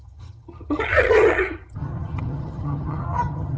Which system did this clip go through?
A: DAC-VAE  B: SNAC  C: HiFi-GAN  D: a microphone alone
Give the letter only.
C